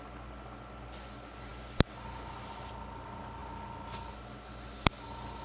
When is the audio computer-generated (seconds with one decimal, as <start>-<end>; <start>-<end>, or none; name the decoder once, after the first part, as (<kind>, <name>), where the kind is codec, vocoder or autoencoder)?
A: none